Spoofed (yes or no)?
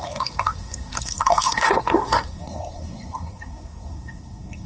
yes